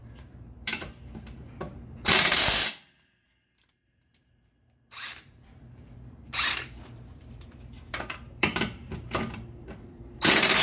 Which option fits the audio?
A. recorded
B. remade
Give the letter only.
B